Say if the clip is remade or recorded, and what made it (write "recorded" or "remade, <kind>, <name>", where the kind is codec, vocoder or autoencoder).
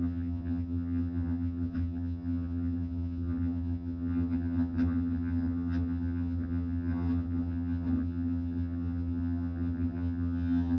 remade, vocoder, HiFi-GAN